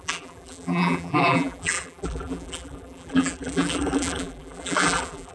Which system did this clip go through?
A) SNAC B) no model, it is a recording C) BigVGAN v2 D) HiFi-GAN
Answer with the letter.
C